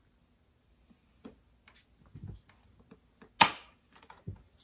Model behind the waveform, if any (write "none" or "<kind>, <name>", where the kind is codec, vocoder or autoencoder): none